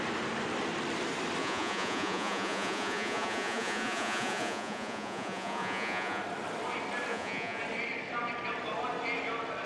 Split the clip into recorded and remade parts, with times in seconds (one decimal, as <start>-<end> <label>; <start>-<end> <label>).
0.0-1.4 recorded; 1.4-6.2 remade; 6.2-7.1 recorded; 7.1-7.6 remade; 7.6-9.7 recorded